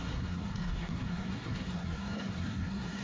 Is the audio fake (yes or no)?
yes